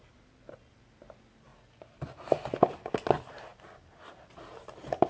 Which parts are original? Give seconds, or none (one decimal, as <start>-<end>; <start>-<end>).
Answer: 0.0-5.1

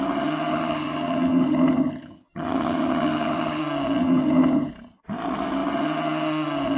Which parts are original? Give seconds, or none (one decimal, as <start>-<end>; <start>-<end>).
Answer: 0.0-0.5; 3.6-4.0; 4.7-6.8

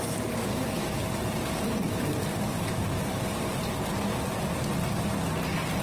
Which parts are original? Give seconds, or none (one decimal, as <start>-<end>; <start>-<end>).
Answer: 0.0-1.0; 3.6-5.8

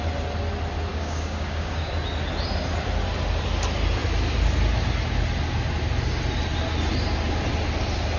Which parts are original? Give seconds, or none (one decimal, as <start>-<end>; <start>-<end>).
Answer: 0.0-0.9; 1.9-8.2